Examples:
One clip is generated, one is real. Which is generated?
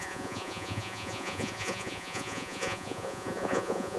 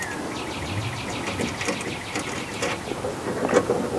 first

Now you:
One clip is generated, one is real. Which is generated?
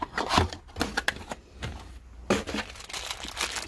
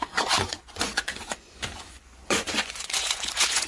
second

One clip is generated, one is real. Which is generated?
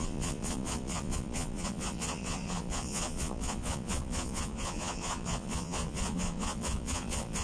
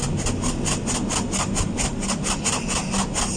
first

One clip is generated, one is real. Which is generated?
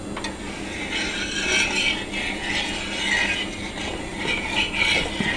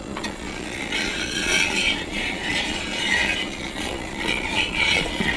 second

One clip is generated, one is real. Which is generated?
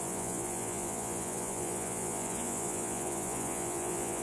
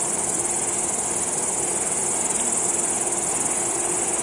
first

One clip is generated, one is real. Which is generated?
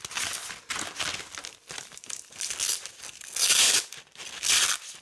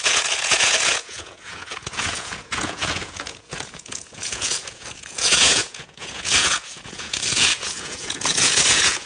second